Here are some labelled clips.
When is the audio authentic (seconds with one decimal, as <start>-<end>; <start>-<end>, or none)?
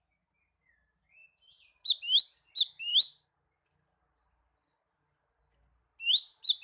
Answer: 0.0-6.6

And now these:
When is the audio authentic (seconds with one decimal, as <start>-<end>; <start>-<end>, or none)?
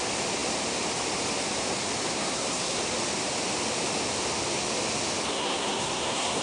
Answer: 0.0-2.1; 2.8-5.3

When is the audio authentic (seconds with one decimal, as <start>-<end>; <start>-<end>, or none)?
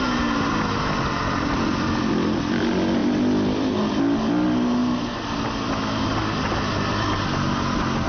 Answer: 0.0-3.0; 3.9-8.1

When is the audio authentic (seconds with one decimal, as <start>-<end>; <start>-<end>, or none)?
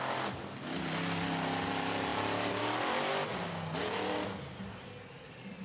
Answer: 0.0-5.6